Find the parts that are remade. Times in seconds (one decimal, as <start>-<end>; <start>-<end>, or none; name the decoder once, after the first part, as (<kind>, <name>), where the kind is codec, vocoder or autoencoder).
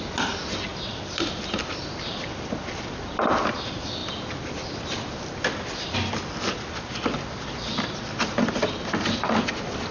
0.7-1.9 (vocoder, BigVGAN v2); 4.0-6.1